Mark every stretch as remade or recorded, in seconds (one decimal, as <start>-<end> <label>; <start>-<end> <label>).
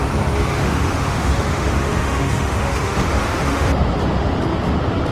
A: 0.0-0.6 recorded; 0.6-3.7 remade; 3.7-5.1 recorded